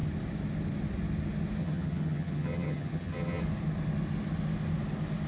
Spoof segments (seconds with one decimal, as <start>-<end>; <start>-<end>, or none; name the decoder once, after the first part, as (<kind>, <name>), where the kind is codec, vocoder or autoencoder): 1.6-3.4 (vocoder, HiFi-GAN)